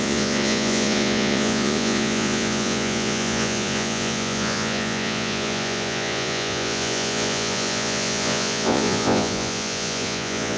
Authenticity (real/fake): fake